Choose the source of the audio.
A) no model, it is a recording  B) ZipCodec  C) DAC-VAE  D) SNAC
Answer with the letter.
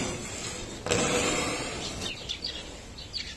A